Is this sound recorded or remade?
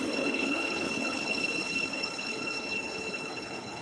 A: remade